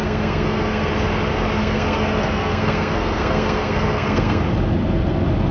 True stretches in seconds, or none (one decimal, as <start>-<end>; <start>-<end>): 0.9-1.6; 4.4-5.5